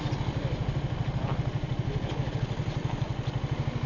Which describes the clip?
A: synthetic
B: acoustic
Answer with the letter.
B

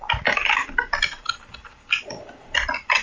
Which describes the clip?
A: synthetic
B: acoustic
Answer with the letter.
B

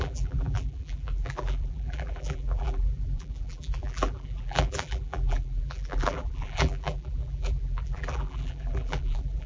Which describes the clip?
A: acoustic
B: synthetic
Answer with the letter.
B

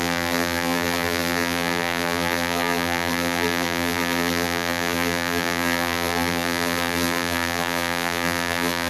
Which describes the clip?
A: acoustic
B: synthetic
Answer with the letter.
B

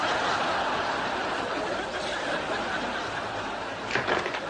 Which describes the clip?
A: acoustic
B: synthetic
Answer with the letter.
B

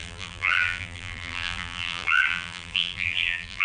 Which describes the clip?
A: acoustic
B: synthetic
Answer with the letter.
B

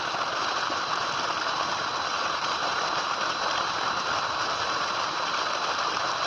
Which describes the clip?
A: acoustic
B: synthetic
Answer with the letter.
B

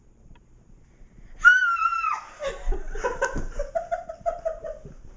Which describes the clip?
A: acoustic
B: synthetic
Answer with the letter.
B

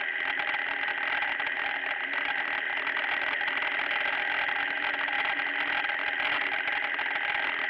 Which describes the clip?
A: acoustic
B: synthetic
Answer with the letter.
A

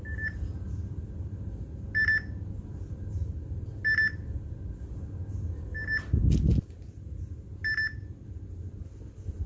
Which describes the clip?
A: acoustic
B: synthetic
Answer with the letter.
A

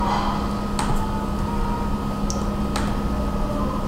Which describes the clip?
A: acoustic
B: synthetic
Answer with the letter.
A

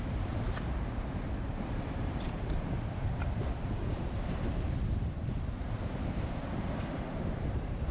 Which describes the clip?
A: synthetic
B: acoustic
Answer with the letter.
A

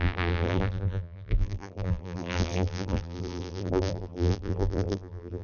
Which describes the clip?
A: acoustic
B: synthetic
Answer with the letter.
B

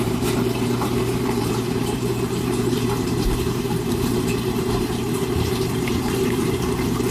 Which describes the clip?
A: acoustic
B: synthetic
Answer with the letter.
B